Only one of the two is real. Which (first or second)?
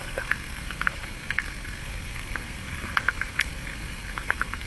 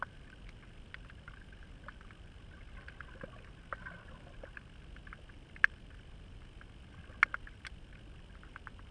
second